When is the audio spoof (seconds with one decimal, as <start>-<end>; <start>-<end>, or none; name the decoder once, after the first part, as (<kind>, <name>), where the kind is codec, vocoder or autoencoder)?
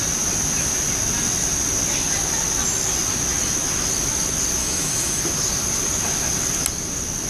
4.6-5.2 (autoencoder, DAC-VAE)